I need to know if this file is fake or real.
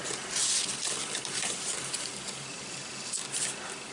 real